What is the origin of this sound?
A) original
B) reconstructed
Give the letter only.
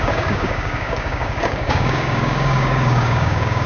B